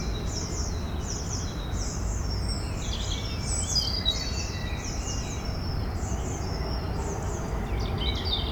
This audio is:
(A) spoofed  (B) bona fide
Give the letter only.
B